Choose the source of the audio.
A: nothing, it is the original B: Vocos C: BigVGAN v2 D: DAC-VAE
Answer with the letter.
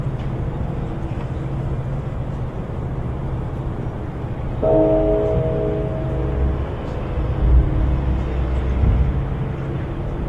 A